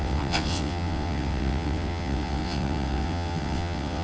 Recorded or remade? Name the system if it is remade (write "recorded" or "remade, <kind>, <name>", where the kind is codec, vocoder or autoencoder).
remade, vocoder, WaveNeXt